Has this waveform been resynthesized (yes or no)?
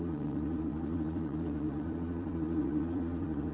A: yes